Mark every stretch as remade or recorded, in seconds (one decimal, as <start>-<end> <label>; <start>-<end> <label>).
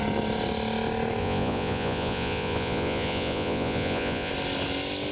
0.0-1.2 recorded; 1.2-4.3 remade; 4.3-5.1 recorded